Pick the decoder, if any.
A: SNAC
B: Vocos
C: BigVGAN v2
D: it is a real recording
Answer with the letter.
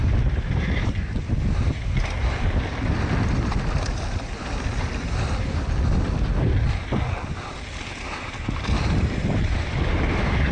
D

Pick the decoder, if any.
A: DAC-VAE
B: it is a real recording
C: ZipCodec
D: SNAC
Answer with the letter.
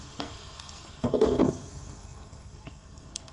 D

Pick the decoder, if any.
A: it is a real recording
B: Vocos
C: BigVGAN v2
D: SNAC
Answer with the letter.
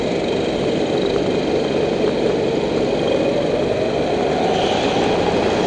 A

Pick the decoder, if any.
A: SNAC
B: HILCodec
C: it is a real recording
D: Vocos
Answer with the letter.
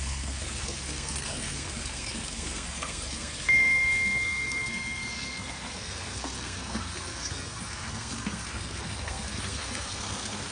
A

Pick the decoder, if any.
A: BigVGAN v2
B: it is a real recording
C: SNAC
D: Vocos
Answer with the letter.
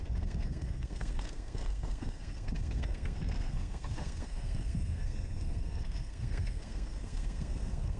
C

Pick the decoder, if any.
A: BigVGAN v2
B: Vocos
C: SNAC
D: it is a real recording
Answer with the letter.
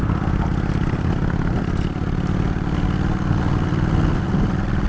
D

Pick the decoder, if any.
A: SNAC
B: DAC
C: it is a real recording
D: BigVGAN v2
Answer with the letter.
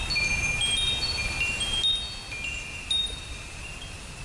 C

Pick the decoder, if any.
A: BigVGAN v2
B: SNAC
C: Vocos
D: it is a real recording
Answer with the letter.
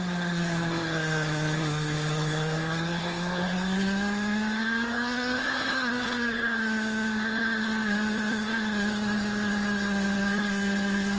B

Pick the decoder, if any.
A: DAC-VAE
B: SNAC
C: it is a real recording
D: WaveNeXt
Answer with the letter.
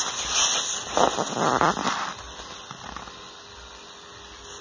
C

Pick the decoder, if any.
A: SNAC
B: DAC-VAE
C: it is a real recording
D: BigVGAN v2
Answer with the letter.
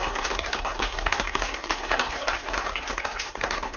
A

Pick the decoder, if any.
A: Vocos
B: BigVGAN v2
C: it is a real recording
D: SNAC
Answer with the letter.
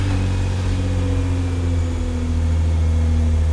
C